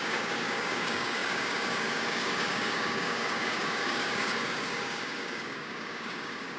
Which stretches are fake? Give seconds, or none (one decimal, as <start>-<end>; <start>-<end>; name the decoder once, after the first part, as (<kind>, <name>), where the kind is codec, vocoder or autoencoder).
0.0-6.6 (codec, DAC)